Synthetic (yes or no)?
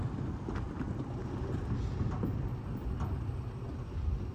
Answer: no